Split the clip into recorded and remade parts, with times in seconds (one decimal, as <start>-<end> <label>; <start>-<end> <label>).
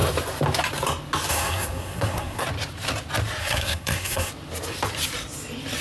0.0-1.3 recorded; 1.3-2.4 remade; 2.4-3.4 recorded; 3.4-4.3 remade; 4.3-5.8 recorded